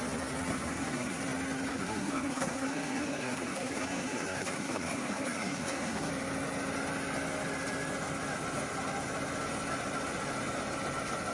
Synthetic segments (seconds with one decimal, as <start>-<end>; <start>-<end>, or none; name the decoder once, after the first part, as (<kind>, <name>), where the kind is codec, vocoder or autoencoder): 0.5-1.2 (codec, SNAC); 1.7-6.1